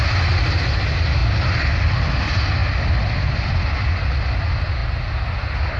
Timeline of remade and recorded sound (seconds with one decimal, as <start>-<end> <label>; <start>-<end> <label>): 0.0-5.8 recorded

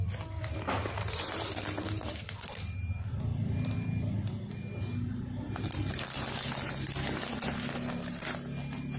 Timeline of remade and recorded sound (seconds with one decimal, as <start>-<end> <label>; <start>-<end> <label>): 0.0-9.0 recorded

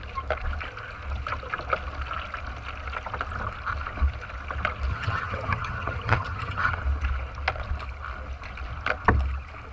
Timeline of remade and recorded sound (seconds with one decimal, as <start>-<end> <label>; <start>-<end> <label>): 0.0-4.9 recorded; 4.9-6.8 remade; 6.8-9.7 recorded

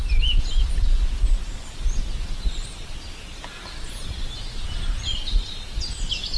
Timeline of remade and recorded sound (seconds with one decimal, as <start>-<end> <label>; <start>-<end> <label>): 0.0-6.4 recorded